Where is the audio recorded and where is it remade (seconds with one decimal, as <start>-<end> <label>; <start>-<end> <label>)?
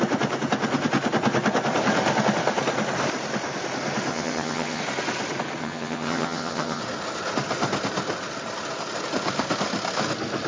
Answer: 0.0-4.1 recorded; 4.1-4.8 remade; 4.8-5.6 recorded; 5.6-6.8 remade; 6.8-10.5 recorded